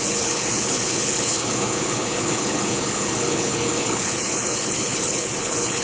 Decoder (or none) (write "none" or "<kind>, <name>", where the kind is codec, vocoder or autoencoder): codec, HILCodec